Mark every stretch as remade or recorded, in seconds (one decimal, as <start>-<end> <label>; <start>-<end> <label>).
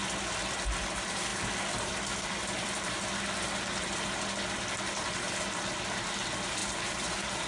0.0-7.5 recorded